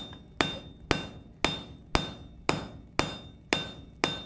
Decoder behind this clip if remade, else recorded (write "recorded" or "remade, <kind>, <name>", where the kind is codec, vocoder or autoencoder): recorded